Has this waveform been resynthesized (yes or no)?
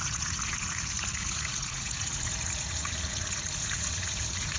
yes